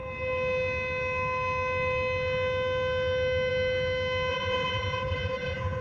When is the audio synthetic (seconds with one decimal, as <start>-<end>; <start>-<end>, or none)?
4.3-5.8